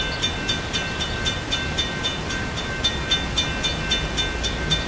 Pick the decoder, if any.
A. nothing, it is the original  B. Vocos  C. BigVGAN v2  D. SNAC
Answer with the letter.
A